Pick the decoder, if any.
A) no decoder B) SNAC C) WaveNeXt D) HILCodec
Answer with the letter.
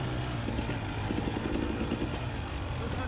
A